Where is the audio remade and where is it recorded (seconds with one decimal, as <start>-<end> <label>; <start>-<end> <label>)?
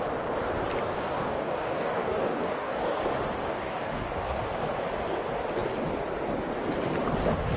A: 0.0-0.8 recorded; 0.8-3.0 remade; 3.0-3.5 recorded; 3.5-4.4 remade; 4.4-7.6 recorded